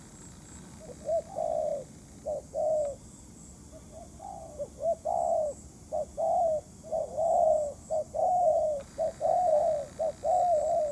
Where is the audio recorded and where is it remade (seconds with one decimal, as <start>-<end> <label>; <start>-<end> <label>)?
0.0-6.9 recorded; 6.9-9.7 remade; 9.7-10.9 recorded